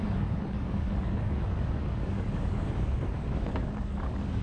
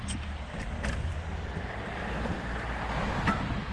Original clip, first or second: second